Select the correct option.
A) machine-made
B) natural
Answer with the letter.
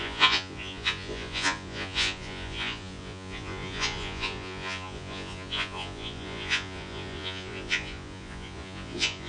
A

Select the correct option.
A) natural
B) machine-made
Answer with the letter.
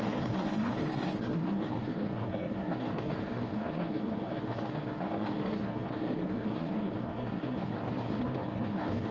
B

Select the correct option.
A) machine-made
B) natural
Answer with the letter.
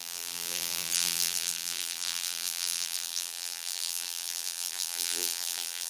A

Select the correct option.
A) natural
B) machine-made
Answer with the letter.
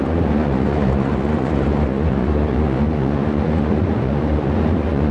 B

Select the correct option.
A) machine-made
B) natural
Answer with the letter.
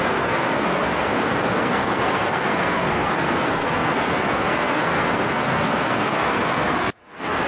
A